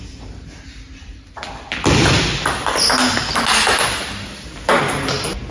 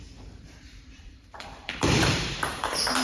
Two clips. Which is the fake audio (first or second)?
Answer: second